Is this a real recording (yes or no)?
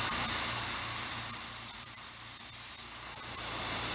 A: yes